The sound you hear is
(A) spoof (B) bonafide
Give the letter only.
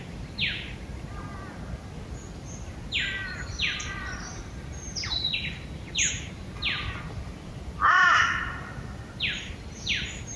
A